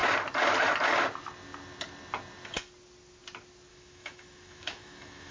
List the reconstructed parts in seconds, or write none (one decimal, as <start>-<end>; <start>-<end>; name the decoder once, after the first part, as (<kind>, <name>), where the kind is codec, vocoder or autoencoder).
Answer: 3.7-5.3 (autoencoder, DAC-VAE)